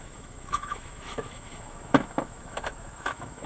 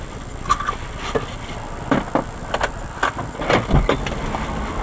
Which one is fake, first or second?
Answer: first